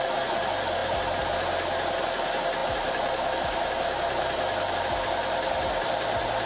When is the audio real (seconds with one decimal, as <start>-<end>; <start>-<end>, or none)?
0.0-6.5